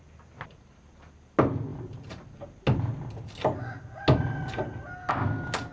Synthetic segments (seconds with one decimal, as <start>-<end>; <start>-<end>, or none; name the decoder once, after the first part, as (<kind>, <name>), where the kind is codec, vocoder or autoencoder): none